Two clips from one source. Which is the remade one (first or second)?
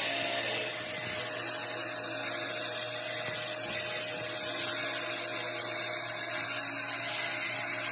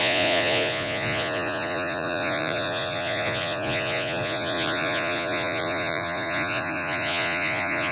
second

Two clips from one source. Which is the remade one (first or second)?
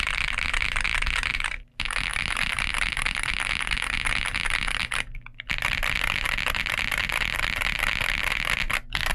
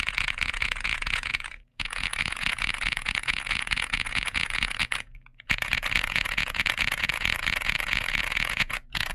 second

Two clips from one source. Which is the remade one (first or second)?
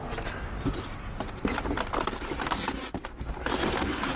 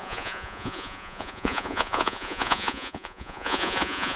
second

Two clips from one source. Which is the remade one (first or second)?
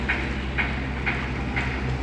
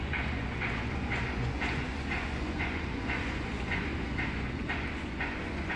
second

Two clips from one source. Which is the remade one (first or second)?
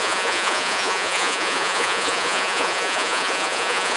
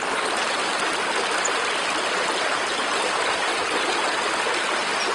first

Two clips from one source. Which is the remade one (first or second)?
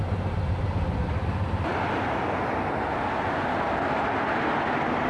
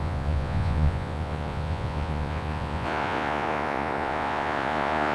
second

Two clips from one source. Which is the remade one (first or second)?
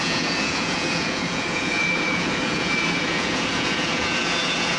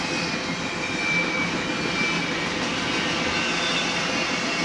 first